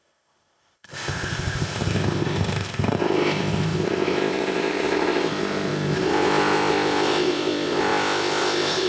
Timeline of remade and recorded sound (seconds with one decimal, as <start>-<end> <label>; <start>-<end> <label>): 0.0-8.9 remade